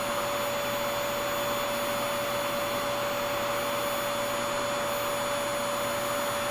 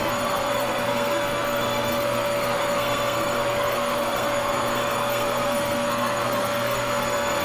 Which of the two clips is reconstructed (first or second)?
second